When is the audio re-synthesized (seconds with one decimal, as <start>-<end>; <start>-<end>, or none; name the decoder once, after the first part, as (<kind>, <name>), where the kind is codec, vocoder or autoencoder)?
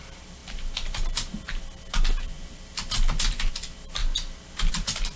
none